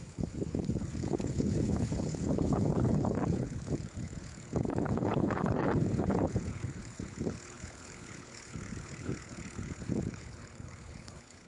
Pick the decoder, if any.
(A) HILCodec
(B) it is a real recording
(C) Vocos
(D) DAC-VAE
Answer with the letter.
A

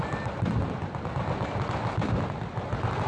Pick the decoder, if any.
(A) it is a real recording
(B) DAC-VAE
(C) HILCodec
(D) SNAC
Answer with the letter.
A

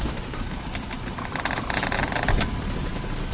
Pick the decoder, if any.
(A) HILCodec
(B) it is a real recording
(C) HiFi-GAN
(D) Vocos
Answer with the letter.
B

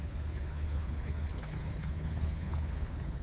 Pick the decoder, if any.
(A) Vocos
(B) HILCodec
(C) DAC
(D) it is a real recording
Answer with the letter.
B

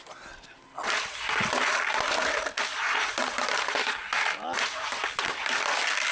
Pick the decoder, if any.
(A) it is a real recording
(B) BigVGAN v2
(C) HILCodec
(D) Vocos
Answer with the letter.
A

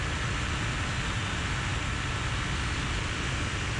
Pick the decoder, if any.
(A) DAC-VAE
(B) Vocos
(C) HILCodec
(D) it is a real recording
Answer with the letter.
D